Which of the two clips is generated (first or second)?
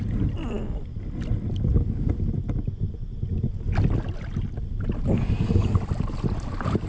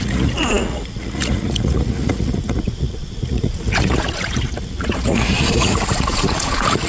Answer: second